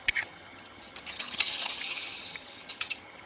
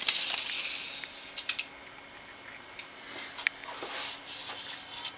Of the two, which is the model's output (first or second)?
first